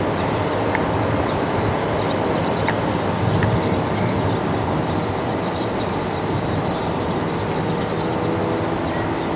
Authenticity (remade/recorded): recorded